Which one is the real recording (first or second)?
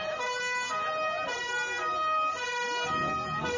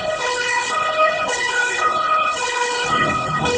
first